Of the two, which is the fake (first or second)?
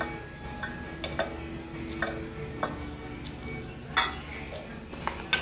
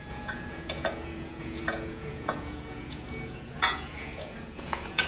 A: second